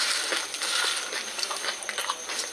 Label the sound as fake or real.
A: real